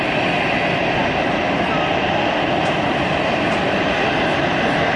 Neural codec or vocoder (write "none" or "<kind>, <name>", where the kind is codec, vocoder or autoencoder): none